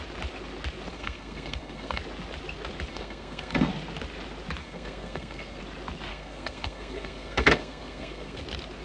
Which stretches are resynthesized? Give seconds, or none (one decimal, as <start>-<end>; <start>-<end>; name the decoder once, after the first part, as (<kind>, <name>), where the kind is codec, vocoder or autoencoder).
0.9-2.0 (codec, SNAC); 2.9-3.7; 4.6-5.6; 6.1-8.4